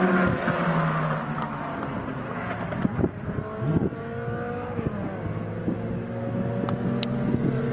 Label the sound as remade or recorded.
recorded